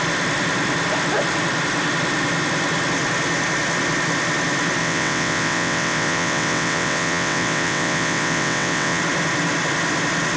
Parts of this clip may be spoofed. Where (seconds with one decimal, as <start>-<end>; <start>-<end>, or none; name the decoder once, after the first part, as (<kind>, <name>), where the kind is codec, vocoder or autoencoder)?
4.8-9.0 (vocoder, WaveNeXt)